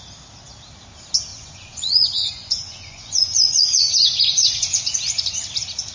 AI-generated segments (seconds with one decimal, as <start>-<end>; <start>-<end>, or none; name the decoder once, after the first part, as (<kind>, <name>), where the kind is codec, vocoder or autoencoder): 1.3-4.8 (vocoder, Vocos)